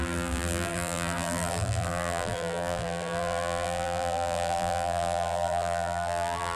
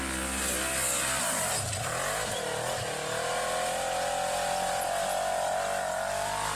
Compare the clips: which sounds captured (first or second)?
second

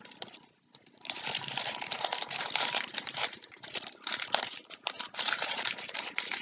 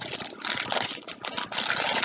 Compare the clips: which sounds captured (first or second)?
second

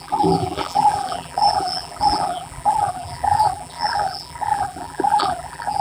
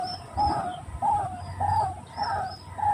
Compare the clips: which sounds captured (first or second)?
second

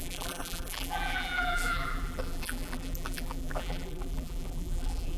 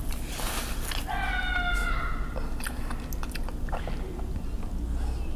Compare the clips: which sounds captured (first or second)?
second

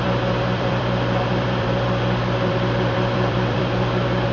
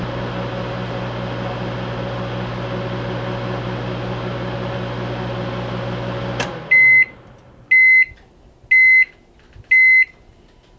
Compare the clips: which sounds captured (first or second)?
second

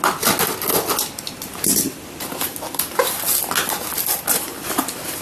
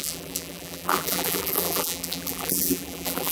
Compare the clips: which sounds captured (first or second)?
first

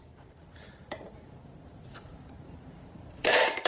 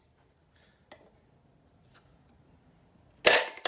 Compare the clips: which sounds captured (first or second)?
second